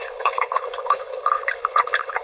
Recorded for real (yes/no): no